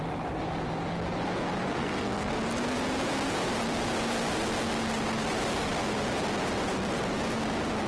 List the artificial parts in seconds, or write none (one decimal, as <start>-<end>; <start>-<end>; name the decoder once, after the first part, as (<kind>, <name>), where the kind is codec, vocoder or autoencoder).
1.6-2.3 (codec, SNAC)